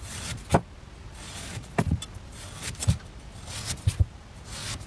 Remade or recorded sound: recorded